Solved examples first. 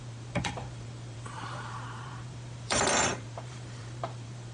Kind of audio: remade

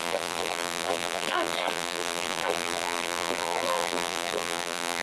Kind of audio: remade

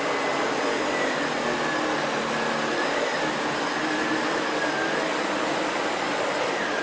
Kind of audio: recorded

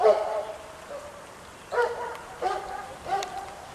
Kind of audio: remade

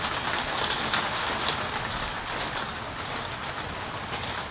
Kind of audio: recorded